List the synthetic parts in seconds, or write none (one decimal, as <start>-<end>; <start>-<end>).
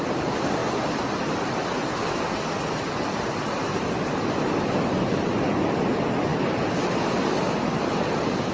none